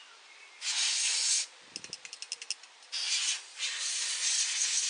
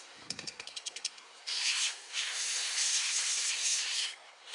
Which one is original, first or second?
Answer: first